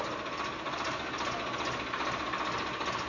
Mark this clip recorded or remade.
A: recorded